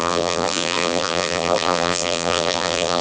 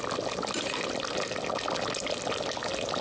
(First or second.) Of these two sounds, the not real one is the first